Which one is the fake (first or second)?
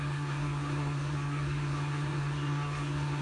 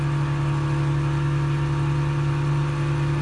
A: first